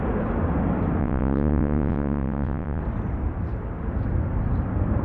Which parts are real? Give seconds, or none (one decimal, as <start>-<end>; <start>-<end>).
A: 0.0-1.0; 2.8-5.0